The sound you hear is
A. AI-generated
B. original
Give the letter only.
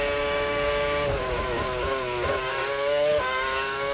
A